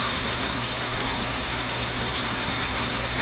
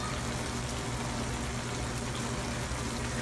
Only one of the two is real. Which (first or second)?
second